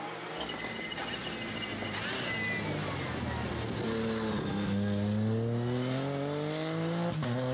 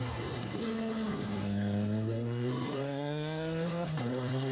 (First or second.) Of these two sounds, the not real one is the second